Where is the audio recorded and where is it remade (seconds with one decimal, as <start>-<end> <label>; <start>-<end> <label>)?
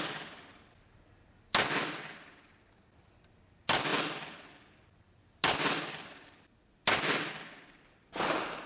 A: 0.0-8.7 recorded